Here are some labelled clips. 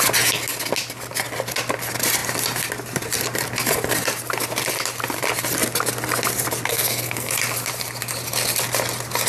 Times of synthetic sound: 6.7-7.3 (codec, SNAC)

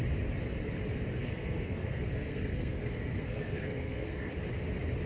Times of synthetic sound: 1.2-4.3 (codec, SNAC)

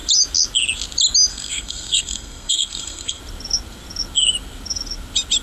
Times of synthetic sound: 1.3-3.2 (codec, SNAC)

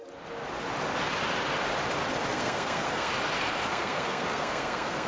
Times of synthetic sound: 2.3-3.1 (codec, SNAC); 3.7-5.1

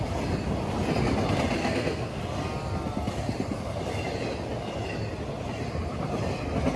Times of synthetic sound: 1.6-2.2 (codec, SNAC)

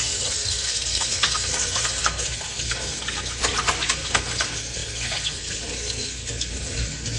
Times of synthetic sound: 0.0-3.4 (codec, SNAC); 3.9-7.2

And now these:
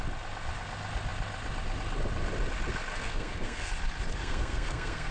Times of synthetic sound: 2.9-3.7 (codec, SNAC); 4.2-5.1

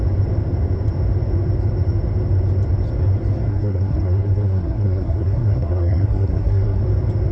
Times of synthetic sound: 3.5-6.8 (codec, SNAC)